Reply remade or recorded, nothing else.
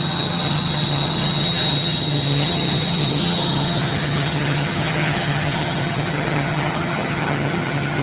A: remade